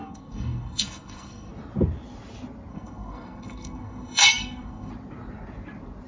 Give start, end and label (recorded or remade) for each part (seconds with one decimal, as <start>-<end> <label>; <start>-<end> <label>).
0.0-1.5 remade; 1.5-2.7 recorded; 2.7-4.9 remade; 4.9-6.1 recorded